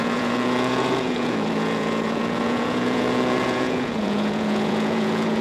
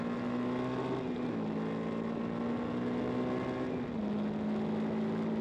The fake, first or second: first